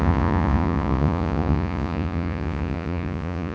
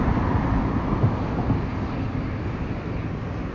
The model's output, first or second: first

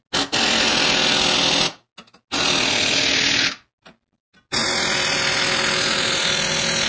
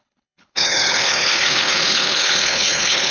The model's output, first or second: second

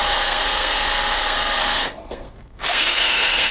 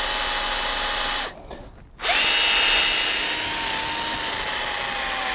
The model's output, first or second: first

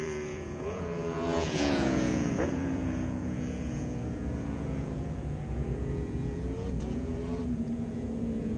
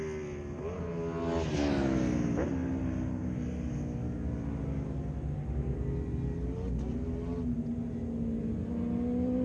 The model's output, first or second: first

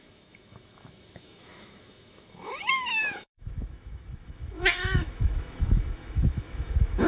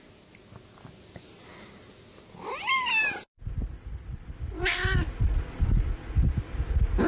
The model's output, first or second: first